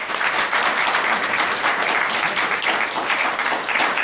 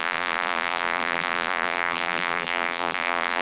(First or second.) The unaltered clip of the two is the first